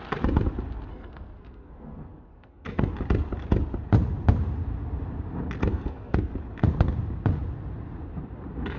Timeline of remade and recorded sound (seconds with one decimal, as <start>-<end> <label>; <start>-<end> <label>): 0.0-0.9 recorded; 0.9-2.9 remade; 2.9-5.7 recorded; 5.7-6.3 remade; 6.3-8.8 recorded